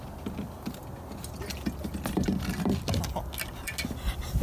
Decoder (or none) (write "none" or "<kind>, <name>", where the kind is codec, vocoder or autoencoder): none